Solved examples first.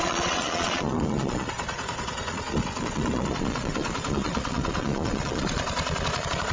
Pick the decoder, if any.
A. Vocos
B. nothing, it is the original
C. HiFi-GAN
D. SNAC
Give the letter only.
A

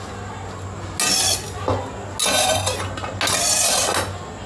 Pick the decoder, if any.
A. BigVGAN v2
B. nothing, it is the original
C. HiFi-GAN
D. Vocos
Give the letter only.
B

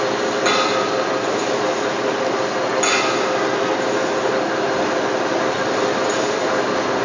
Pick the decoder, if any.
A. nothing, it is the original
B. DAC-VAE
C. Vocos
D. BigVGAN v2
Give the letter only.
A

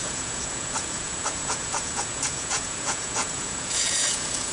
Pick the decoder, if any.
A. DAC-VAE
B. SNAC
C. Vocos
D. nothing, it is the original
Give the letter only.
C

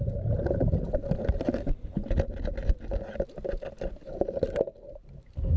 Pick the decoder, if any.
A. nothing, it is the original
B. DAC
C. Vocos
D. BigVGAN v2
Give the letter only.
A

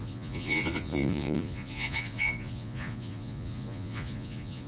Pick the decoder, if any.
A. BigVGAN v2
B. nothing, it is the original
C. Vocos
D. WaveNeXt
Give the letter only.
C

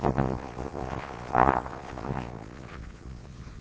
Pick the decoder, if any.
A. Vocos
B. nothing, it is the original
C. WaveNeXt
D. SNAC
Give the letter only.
A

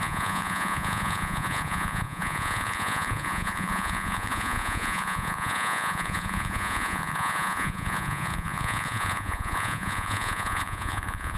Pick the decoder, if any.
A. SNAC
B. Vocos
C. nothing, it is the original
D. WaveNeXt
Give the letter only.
B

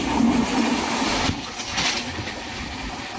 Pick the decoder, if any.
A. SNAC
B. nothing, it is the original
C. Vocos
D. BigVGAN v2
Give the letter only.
B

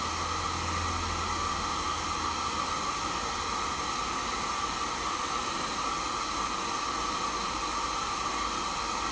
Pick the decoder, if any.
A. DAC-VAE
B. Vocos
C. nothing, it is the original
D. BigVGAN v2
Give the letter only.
C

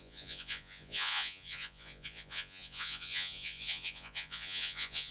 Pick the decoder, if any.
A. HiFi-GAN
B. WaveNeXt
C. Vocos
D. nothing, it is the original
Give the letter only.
C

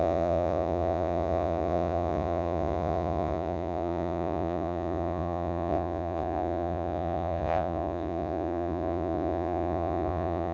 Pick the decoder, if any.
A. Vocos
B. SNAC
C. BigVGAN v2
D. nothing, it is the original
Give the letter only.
A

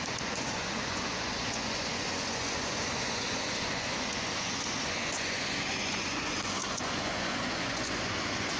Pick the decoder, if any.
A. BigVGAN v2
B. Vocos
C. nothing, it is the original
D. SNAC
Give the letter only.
B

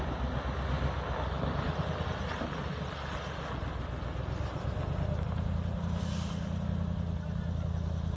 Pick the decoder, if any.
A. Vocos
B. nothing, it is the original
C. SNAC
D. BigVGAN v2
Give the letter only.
B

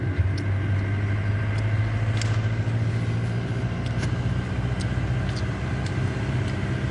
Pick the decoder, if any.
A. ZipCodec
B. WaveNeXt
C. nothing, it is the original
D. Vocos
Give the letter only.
C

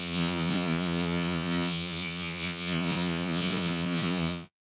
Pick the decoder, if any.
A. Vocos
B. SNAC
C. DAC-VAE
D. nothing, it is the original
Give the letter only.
A